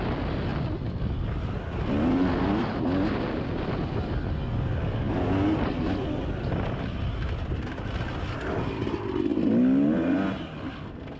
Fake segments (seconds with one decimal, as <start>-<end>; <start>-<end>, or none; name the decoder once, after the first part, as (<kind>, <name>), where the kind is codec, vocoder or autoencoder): none